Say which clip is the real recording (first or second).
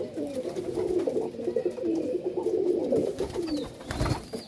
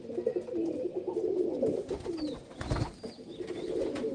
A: second